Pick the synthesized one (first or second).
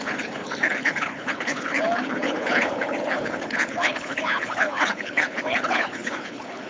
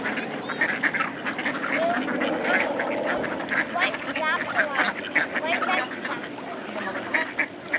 first